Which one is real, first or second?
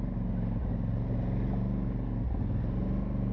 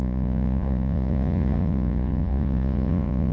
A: first